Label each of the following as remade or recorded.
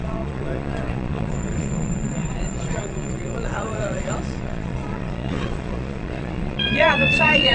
remade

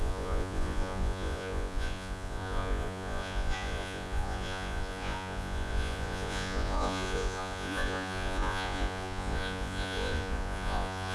remade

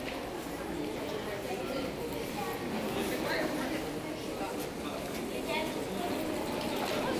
recorded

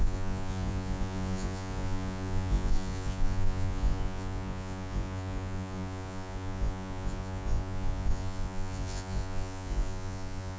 remade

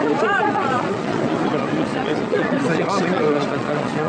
remade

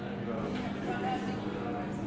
recorded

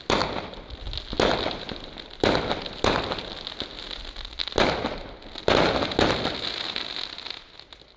recorded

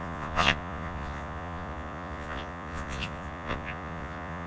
remade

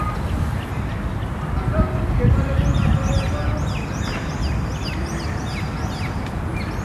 recorded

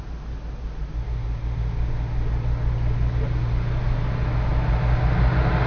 recorded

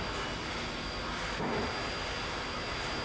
recorded